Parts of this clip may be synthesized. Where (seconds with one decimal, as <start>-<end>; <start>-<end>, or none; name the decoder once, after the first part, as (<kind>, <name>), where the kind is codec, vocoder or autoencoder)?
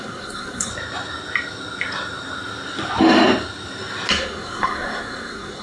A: 0.0-0.7 (codec, SNAC); 4.1-5.6